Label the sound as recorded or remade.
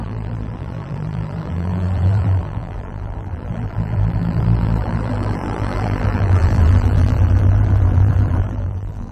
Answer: remade